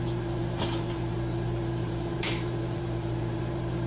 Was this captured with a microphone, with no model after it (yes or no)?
no